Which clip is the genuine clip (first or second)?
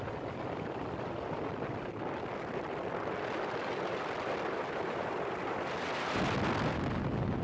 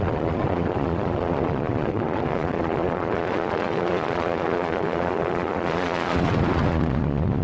first